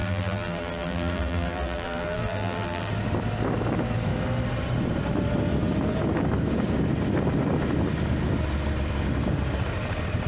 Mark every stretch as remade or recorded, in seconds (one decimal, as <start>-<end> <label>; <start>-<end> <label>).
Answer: 0.0-2.9 remade; 2.9-10.3 recorded